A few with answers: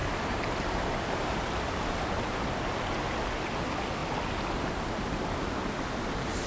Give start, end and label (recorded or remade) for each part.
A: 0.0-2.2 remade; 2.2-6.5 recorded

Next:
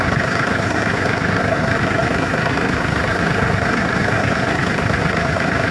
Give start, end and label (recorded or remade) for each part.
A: 0.0-5.7 remade

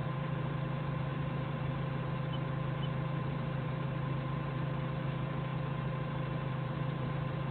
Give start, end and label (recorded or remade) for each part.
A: 0.0-7.5 remade

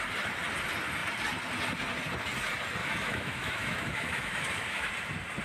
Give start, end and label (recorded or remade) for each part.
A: 0.0-2.8 recorded; 2.8-4.9 remade; 4.9-5.4 recorded

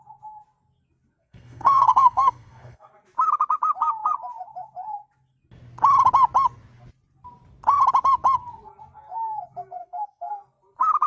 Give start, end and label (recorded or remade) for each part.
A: 0.0-1.2 recorded; 1.2-2.9 remade; 2.9-9.8 recorded; 9.8-10.3 remade; 10.3-11.1 recorded

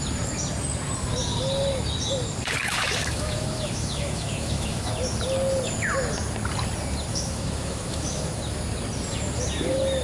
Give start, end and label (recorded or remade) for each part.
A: 0.0-2.6 recorded; 2.6-4.9 remade; 4.9-7.1 recorded; 7.1-8.4 remade; 8.4-10.0 recorded

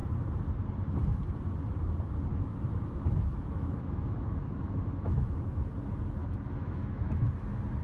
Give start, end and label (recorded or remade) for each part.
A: 0.0-2.3 recorded; 2.3-5.7 remade; 5.7-6.2 recorded; 6.2-7.3 remade; 7.3-7.8 recorded

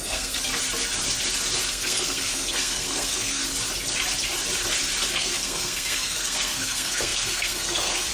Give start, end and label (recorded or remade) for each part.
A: 0.0-0.5 remade; 0.5-1.7 recorded; 1.7-3.4 remade; 3.4-5.1 recorded; 5.1-8.1 remade